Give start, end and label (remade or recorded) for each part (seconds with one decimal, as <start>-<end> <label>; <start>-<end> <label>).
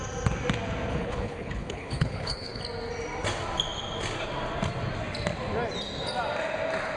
0.0-0.9 recorded; 0.9-2.6 remade; 2.6-7.0 recorded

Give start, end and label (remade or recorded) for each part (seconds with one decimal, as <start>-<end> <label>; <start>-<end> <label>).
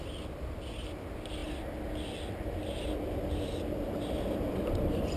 0.0-5.2 recorded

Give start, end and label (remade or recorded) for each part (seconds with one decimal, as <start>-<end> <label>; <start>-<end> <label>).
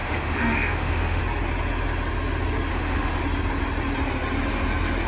0.0-1.2 remade; 1.2-2.7 recorded; 2.7-3.2 remade; 3.2-5.1 recorded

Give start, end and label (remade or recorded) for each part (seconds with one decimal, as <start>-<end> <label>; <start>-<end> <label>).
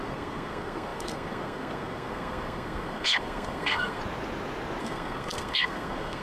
0.0-4.0 remade; 4.0-4.8 recorded; 4.8-6.2 remade